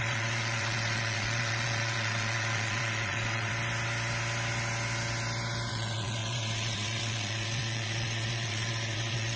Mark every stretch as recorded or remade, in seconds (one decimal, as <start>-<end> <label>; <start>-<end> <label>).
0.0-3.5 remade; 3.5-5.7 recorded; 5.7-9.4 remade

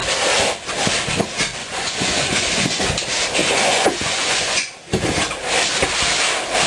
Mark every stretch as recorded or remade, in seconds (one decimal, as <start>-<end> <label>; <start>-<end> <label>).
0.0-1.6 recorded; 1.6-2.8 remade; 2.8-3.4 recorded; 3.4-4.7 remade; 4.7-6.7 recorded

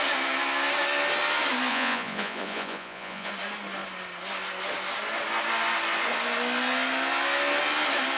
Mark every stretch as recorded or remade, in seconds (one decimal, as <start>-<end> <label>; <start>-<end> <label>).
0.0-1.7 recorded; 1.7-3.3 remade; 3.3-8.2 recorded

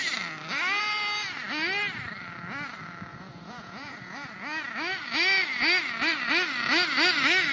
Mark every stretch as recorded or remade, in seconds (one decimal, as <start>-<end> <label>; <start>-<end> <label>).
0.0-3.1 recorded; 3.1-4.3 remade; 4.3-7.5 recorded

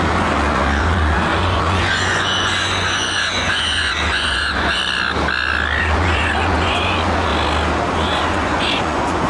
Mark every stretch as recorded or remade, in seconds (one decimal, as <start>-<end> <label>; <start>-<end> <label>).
0.0-4.8 remade; 4.8-5.8 recorded; 5.8-7.3 remade; 7.3-7.9 recorded; 7.9-9.3 remade

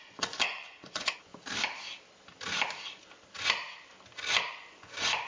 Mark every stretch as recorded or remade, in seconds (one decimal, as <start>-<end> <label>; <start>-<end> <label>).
0.0-1.3 remade; 1.3-4.5 recorded; 4.5-5.3 remade

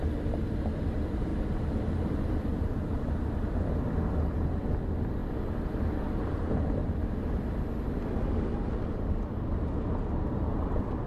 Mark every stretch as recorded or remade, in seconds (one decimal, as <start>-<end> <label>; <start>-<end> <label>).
0.0-11.1 recorded

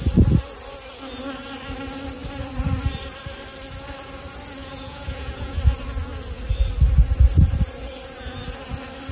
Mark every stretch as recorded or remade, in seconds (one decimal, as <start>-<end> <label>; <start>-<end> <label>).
0.0-4.6 recorded; 4.6-5.6 remade; 5.6-9.1 recorded